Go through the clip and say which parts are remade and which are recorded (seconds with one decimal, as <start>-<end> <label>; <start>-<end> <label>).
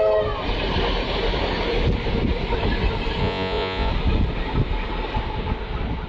0.0-3.2 recorded; 3.2-3.9 remade; 3.9-6.1 recorded